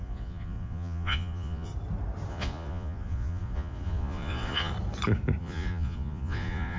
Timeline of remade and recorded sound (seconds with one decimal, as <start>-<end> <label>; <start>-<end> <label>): 0.0-1.7 remade; 1.7-2.3 recorded; 2.3-4.7 remade; 4.7-5.4 recorded; 5.4-6.8 remade